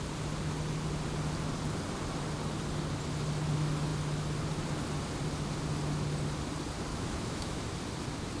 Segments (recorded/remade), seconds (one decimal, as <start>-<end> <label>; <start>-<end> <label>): 0.0-6.9 recorded; 6.9-7.6 remade; 7.6-8.4 recorded